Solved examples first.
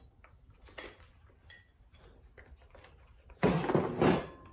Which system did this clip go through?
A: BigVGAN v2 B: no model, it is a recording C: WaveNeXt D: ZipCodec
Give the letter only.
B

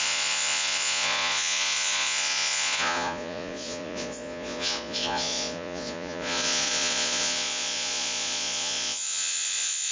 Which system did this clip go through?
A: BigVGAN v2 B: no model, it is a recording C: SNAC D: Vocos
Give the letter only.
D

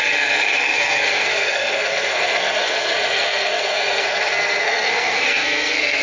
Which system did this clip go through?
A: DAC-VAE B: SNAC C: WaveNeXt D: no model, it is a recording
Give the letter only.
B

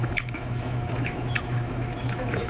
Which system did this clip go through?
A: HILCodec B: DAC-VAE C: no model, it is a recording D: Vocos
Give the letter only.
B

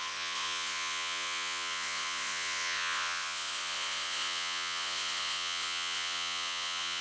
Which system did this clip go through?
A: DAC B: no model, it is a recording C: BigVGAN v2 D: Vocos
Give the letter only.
D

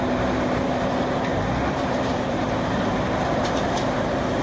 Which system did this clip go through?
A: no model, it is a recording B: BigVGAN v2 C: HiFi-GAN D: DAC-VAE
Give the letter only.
B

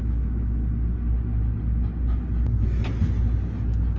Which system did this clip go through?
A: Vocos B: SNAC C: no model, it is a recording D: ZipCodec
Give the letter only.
C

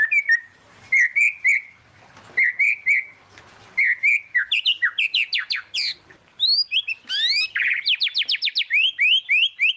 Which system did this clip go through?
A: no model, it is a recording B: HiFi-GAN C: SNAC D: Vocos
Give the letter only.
A